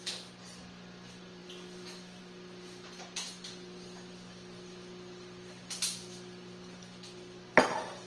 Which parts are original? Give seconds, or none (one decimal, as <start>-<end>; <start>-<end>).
0.0-8.1